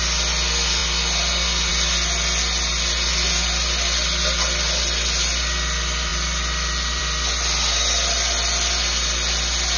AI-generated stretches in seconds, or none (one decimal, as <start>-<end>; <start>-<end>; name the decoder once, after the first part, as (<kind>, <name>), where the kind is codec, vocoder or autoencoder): none